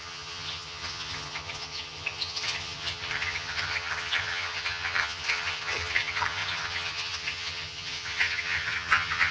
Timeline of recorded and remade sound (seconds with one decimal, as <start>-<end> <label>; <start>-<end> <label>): 0.0-9.3 remade